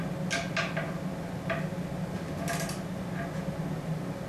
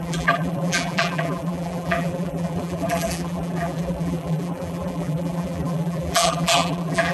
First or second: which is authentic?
first